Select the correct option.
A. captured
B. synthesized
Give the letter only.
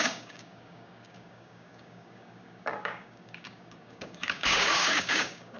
B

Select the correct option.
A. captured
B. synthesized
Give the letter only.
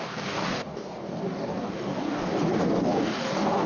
B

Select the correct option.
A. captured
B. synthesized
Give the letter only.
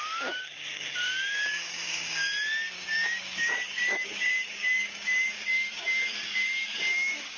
B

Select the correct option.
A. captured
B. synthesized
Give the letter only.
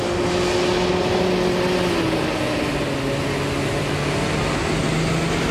A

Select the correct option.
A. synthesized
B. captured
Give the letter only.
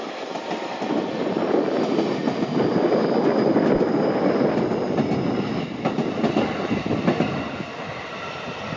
B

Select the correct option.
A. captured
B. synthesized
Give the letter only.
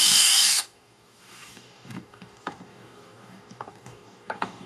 B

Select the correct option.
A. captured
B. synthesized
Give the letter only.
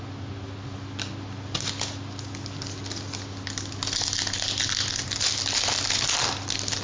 A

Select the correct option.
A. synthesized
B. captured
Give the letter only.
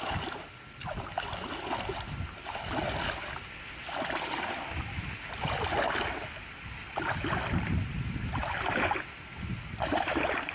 B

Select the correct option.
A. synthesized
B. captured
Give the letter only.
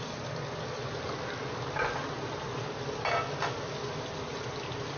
B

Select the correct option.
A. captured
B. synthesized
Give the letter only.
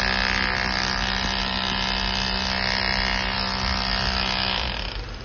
A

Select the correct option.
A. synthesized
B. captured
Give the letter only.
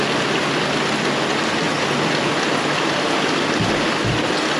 B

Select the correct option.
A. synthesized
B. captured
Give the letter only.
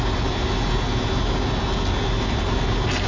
B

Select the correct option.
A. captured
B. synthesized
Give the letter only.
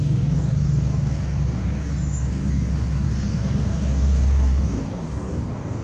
B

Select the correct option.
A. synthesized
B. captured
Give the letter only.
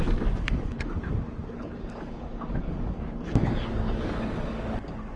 A